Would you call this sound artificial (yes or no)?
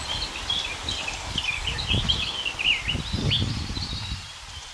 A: no